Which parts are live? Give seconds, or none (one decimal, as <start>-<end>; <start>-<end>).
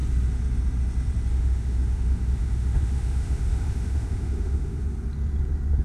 0.0-1.3; 4.8-5.8